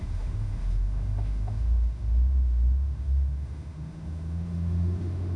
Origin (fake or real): fake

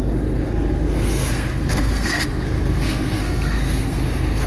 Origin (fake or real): fake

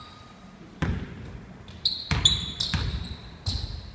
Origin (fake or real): real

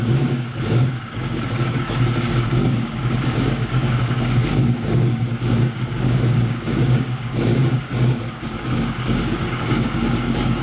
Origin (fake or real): fake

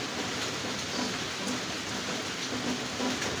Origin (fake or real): real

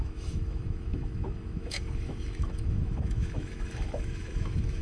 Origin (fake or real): fake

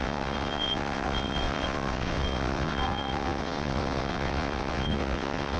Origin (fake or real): fake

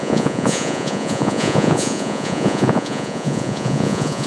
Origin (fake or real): fake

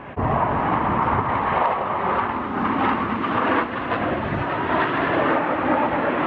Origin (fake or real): real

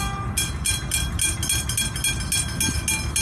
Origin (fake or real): real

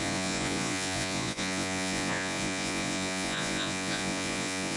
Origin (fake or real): fake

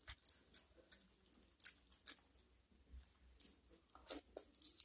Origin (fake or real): real